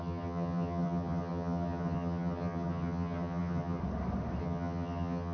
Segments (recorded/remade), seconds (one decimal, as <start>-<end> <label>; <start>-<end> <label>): 0.0-3.8 remade; 3.8-4.4 recorded; 4.4-5.3 remade